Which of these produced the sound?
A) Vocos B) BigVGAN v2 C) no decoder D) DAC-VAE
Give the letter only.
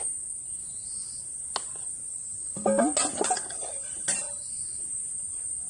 C